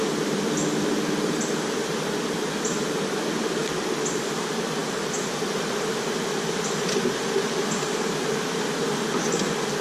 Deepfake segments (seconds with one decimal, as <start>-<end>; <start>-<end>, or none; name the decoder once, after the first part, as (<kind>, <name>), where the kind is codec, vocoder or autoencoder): none